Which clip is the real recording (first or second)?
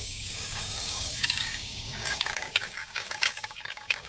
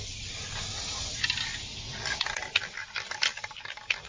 second